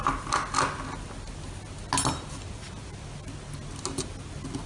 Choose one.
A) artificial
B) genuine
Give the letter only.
B